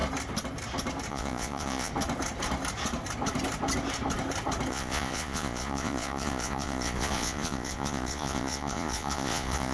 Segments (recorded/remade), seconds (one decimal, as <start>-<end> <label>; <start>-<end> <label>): 0.0-1.1 recorded; 1.1-1.9 remade; 1.9-4.7 recorded; 4.7-9.7 remade